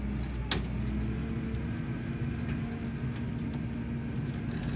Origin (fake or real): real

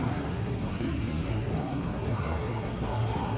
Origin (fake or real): fake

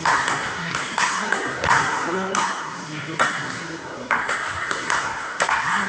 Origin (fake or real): fake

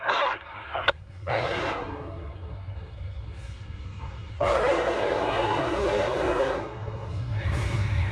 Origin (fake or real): fake